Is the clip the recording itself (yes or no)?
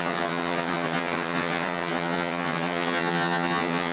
no